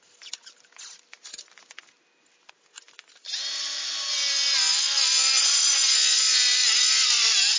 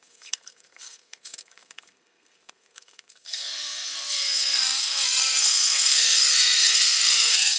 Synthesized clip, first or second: second